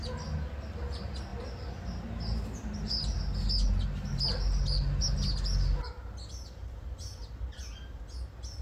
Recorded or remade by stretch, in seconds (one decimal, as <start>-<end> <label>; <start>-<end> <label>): 0.0-8.6 recorded